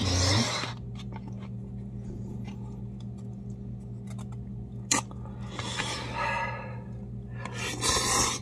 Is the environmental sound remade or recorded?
recorded